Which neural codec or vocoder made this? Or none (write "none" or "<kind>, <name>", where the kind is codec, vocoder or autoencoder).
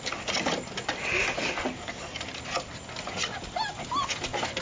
none